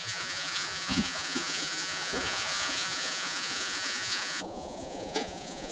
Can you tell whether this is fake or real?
fake